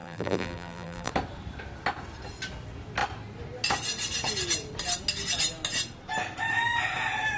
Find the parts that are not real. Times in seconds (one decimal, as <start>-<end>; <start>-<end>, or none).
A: 0.0-1.1